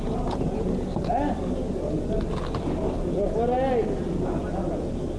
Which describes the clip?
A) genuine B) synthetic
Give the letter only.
A